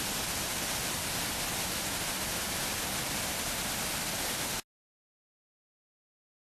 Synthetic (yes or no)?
no